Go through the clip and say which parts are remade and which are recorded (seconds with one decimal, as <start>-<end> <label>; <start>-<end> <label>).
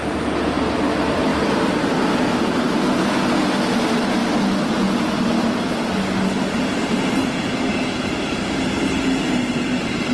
0.0-10.1 recorded